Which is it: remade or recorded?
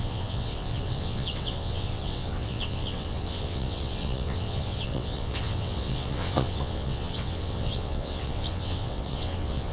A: remade